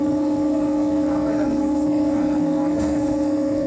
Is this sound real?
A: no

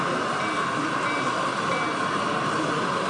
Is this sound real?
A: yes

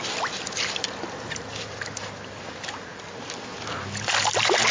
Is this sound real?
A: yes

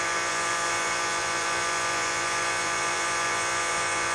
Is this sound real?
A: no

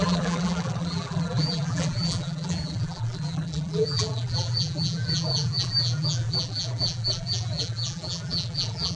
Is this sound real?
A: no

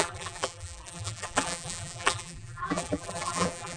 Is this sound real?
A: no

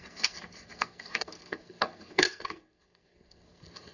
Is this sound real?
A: no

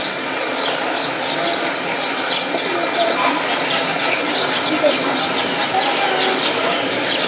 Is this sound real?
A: yes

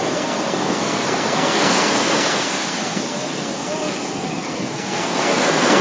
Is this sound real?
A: no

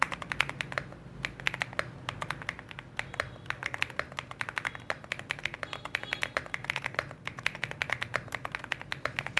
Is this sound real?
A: yes